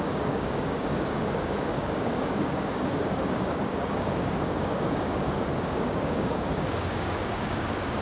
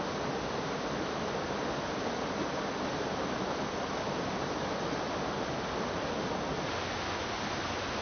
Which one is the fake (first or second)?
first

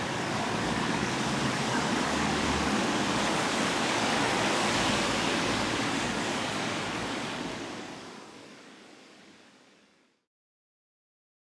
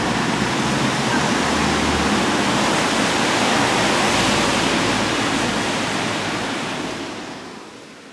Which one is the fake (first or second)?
first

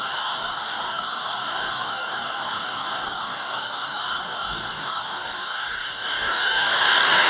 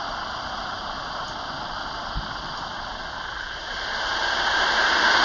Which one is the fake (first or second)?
first